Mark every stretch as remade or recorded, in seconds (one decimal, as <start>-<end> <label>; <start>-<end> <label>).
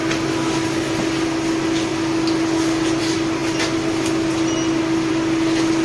0.0-5.8 recorded